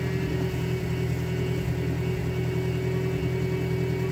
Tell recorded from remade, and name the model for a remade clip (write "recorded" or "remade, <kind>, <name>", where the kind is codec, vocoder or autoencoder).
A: recorded